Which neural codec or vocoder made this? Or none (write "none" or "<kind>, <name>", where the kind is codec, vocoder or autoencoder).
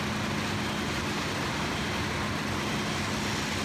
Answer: none